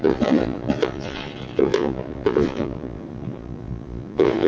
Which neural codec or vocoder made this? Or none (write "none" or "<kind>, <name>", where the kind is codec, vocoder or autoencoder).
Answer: vocoder, Vocos